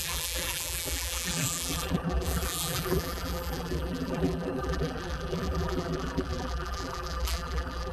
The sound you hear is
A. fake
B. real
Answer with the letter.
A